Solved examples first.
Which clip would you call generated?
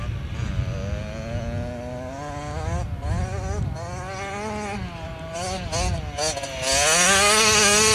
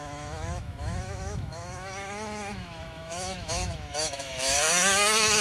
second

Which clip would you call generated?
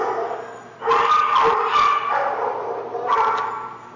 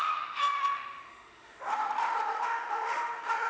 second